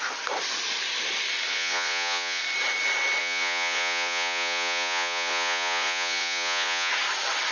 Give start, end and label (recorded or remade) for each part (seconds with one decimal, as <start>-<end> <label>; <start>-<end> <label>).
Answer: 0.0-1.5 recorded; 1.5-2.4 remade; 2.4-3.2 recorded; 3.2-6.9 remade; 6.9-7.5 recorded